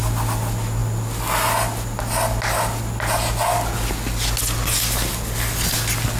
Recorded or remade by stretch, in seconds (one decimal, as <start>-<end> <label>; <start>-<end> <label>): 0.0-6.2 recorded